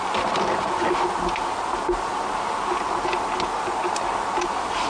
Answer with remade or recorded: recorded